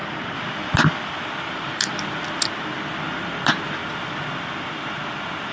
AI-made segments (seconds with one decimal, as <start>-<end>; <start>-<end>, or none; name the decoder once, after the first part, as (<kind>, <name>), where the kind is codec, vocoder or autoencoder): none